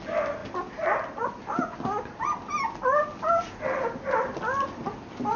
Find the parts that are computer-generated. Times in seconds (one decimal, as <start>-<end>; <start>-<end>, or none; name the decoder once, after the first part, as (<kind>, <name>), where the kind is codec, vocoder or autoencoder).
none